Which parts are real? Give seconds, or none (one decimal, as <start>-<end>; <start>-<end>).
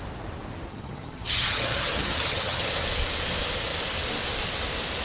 0.0-0.7; 2.7-5.0